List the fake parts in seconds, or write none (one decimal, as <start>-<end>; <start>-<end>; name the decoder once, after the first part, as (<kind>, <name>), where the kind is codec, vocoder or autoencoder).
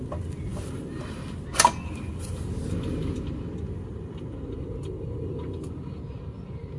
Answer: none